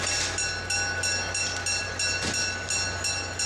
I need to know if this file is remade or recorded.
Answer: recorded